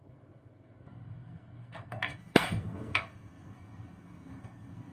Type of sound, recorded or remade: remade